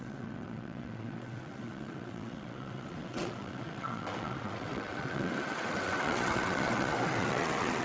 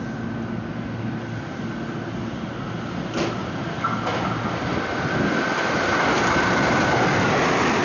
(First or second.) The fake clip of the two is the first